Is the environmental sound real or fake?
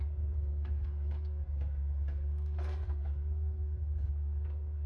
fake